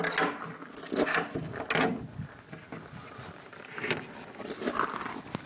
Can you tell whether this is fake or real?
real